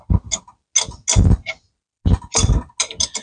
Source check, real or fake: real